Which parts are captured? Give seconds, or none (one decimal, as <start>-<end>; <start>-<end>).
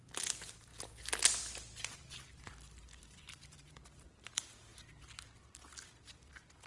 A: 0.7-2.3; 4.7-6.0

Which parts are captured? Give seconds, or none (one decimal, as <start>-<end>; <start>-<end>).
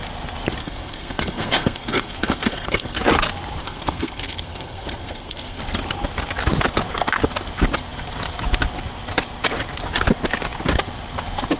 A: 0.0-0.6; 3.0-3.6; 5.6-11.6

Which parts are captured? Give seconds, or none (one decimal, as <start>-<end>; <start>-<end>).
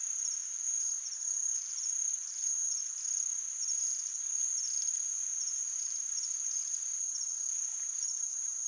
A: 0.0-5.3; 6.8-7.7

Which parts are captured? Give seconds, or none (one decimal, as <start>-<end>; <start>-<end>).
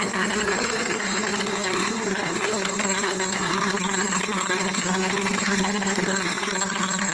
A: none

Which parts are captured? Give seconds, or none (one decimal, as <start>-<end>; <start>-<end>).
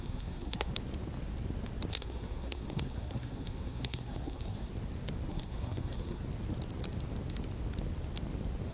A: 0.7-1.9; 4.7-5.3; 6.2-8.7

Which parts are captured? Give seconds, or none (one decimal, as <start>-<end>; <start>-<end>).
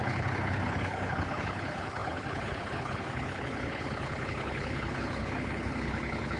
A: none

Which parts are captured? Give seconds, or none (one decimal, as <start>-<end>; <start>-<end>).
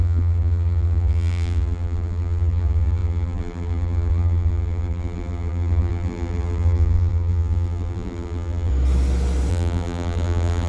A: 8.7-9.5